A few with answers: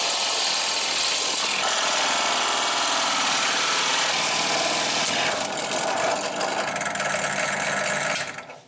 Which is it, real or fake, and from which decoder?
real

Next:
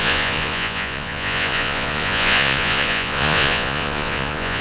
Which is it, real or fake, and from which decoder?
fake, vocoder, Vocos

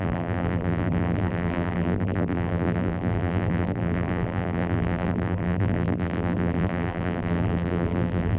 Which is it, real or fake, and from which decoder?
fake, vocoder, BigVGAN v2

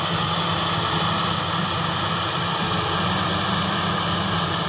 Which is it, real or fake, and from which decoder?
real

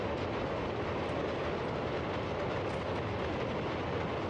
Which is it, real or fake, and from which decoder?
real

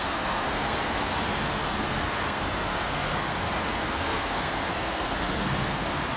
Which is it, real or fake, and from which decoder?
fake, codec, SNAC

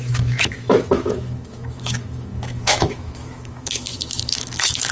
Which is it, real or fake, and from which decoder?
fake, autoencoder, DAC-VAE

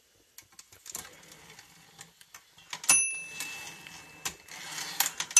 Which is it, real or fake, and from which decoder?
real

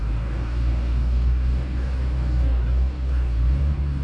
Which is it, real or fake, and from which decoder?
fake, codec, DAC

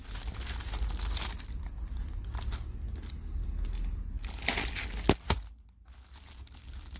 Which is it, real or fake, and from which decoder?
real